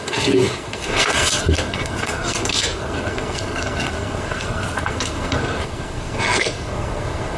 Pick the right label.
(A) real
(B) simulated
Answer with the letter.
B